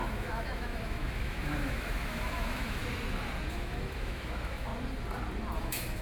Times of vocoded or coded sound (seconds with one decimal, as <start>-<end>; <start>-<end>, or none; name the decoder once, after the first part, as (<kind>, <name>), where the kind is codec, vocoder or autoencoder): 0.0-2.8 (autoencoder, DAC-VAE); 3.5-4.7; 5.6-6.0